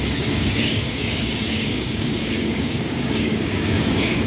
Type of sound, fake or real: fake